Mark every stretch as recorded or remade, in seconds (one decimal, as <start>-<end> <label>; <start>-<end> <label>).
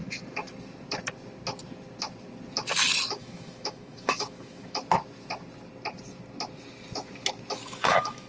0.0-3.1 recorded; 3.1-4.8 remade; 4.8-7.5 recorded; 7.5-8.3 remade